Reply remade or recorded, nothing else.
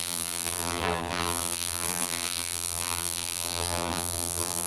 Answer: remade